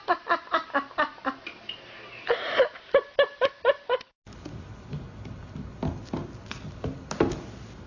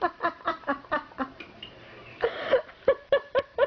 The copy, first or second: second